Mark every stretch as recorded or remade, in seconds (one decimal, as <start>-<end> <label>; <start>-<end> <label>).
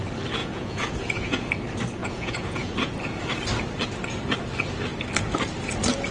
0.0-0.4 recorded; 0.4-1.5 remade; 1.5-2.0 recorded; 2.0-2.7 remade; 2.7-6.1 recorded